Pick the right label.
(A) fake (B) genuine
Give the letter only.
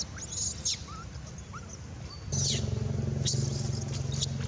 B